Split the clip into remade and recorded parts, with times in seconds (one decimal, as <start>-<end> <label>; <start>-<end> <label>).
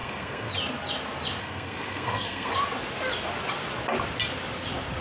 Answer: 0.0-0.5 remade; 0.5-1.4 recorded; 1.4-2.5 remade; 2.5-5.0 recorded